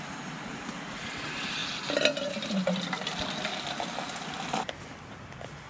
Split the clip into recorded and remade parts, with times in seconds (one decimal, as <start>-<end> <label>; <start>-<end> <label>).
0.0-5.7 recorded